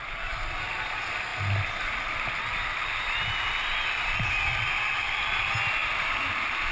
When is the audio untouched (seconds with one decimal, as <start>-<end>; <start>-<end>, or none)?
0.0-6.7